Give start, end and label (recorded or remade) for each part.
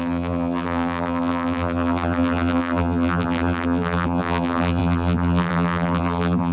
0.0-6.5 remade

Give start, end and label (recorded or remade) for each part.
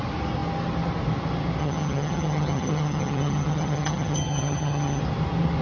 0.0-1.6 recorded; 1.6-5.0 remade; 5.0-5.6 recorded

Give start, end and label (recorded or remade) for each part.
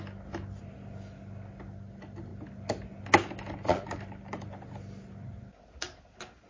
0.0-6.5 recorded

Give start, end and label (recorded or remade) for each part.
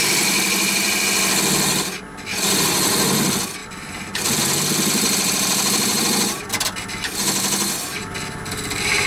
0.0-3.6 recorded; 3.6-6.9 remade; 6.9-9.1 recorded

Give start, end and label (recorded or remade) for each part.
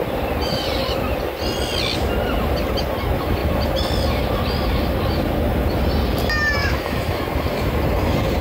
0.0-6.6 recorded; 6.6-7.2 remade; 7.2-8.4 recorded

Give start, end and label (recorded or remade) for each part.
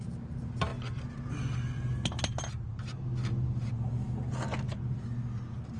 0.0-5.8 recorded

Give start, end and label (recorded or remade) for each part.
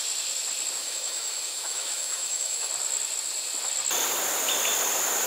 0.0-0.8 recorded; 0.8-2.7 remade; 2.7-5.3 recorded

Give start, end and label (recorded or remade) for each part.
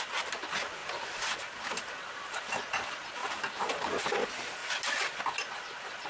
0.0-3.2 recorded; 3.2-4.0 remade; 4.0-6.1 recorded